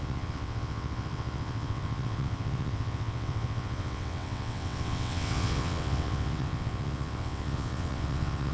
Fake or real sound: fake